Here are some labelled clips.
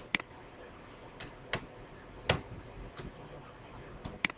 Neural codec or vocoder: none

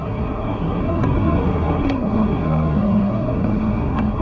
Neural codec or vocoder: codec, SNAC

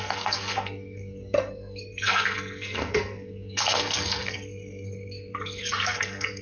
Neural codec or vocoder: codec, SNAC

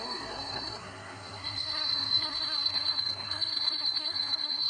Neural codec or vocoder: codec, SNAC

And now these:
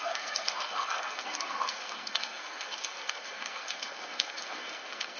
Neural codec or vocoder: codec, SNAC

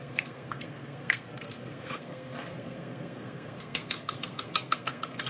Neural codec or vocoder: codec, SNAC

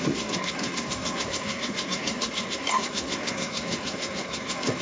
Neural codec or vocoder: codec, SNAC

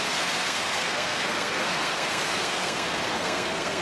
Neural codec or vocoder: codec, SNAC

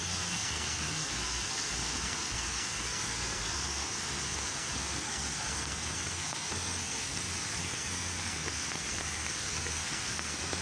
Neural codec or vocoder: codec, SNAC